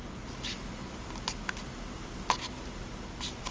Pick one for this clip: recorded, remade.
recorded